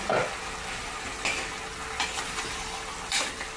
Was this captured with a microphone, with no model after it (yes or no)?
yes